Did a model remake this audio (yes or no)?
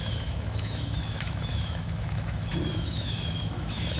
yes